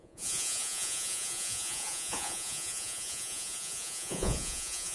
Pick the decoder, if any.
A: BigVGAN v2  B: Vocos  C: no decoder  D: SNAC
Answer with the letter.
B